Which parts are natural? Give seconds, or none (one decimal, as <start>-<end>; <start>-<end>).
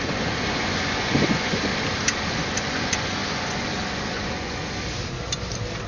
1.7-2.3; 4.6-5.9